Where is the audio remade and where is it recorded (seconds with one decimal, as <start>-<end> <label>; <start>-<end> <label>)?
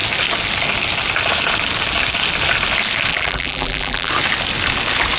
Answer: 0.0-3.1 recorded; 3.1-4.1 remade; 4.1-5.2 recorded